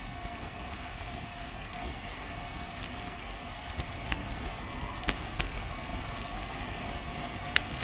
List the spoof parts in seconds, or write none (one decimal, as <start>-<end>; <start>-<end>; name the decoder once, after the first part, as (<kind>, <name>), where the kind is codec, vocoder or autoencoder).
0.0-7.8 (codec, SNAC)